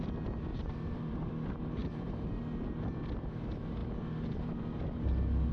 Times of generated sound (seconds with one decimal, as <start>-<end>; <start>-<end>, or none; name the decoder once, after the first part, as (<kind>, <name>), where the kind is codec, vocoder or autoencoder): 0.5-1.3 (vocoder, BigVGAN v2); 1.8-2.4